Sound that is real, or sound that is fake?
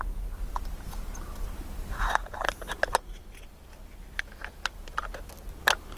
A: real